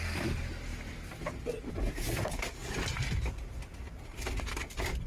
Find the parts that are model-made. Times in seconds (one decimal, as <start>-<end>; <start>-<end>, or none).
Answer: 2.6-3.6